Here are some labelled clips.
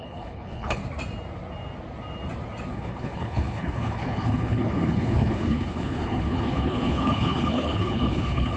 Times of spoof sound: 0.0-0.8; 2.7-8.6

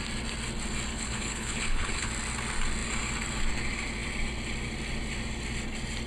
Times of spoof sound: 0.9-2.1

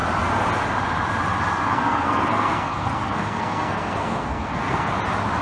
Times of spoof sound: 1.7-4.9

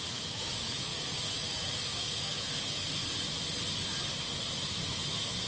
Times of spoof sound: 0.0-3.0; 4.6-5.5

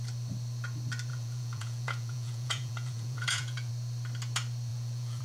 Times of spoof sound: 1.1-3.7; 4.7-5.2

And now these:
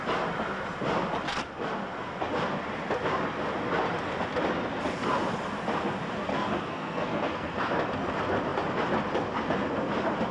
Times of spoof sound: 6.3-7.7

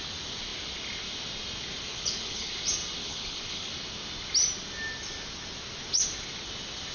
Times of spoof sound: 1.9-2.5; 3.0-3.7